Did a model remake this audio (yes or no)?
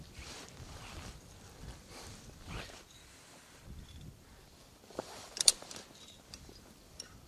yes